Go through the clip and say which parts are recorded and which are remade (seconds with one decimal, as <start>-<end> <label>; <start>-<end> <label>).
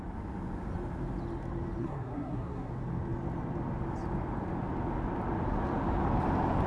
0.0-1.8 recorded; 1.8-2.7 remade; 2.7-6.7 recorded